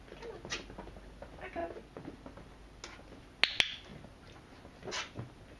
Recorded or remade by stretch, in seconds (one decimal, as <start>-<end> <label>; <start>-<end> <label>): 0.0-5.6 recorded